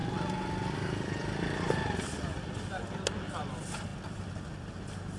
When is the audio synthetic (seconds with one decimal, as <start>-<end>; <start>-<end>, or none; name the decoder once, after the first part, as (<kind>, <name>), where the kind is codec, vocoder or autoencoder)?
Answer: none